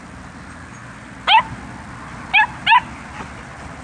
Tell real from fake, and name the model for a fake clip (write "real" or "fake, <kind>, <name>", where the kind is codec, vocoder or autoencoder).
real